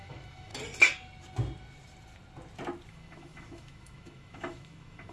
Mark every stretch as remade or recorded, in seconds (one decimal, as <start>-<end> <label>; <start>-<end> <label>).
0.0-0.5 remade; 0.5-2.9 recorded; 2.9-5.1 remade